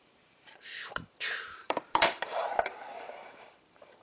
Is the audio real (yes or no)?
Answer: no